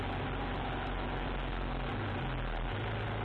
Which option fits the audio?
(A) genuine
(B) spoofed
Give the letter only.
A